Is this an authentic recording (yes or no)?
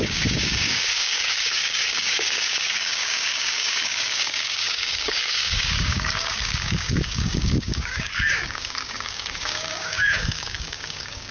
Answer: no